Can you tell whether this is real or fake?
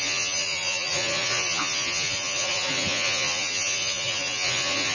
fake